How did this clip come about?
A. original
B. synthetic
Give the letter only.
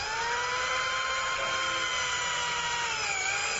A